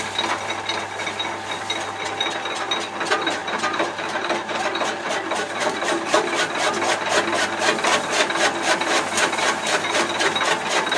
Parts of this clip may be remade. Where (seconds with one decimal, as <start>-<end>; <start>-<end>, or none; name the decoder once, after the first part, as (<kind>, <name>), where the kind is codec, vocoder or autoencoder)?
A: 3.4-6.5 (vocoder, BigVGAN v2)